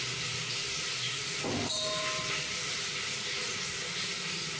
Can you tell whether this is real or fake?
real